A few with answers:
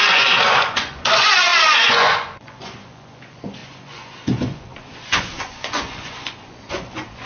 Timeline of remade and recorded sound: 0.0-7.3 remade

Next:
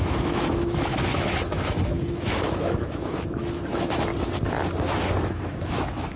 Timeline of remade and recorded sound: 0.0-4.1 remade; 4.1-5.2 recorded; 5.2-6.2 remade

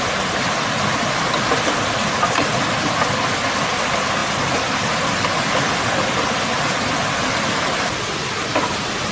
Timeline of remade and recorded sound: 0.0-8.2 recorded; 8.2-9.1 remade